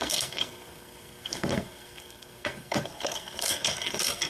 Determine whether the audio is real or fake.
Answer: fake